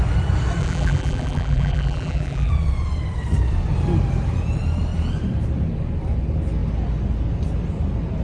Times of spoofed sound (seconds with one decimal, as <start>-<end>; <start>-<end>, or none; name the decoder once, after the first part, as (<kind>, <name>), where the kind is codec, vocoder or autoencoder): 0.6-2.5 (vocoder, BigVGAN v2)